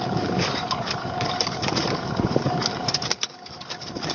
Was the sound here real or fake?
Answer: fake